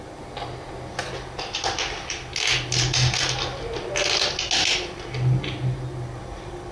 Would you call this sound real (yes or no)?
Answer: yes